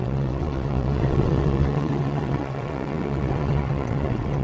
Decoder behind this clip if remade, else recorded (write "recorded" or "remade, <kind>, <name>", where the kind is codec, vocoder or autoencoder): remade, vocoder, WaveNeXt